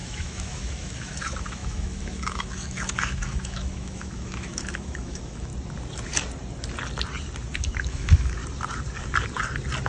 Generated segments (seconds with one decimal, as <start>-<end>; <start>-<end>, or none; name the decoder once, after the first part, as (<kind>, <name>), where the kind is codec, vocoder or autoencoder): 0.0-5.5 (autoencoder, DAC-VAE); 7.6-8.4